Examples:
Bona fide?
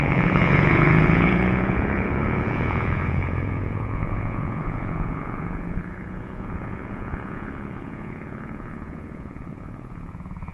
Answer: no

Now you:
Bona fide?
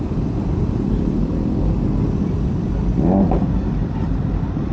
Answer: no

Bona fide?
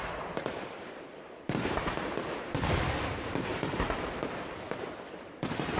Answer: no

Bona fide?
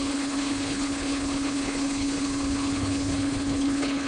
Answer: no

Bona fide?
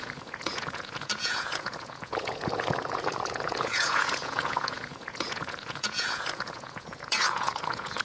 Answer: no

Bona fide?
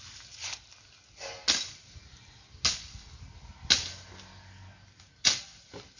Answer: yes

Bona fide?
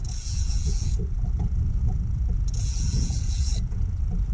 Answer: no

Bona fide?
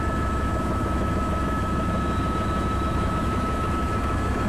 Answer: no